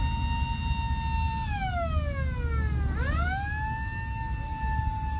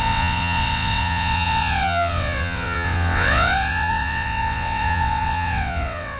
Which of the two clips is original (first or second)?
first